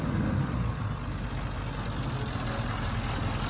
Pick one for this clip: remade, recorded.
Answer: recorded